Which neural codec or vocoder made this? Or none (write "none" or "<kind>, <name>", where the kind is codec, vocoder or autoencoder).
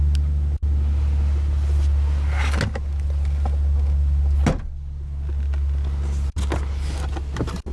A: none